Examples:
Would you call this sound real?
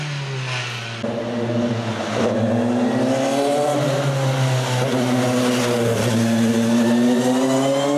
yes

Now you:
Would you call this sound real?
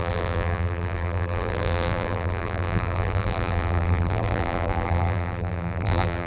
no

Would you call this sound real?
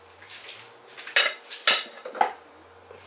yes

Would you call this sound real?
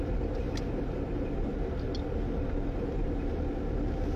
yes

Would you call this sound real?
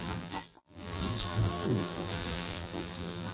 no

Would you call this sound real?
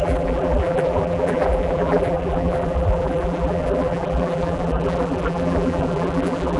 no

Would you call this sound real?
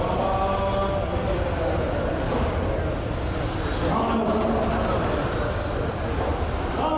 yes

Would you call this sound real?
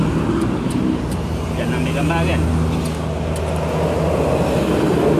yes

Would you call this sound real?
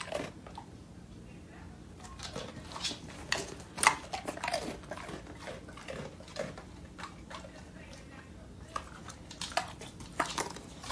yes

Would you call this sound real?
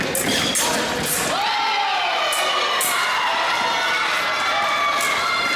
yes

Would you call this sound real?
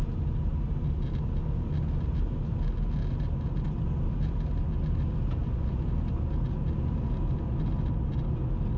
yes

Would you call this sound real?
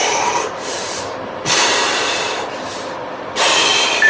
no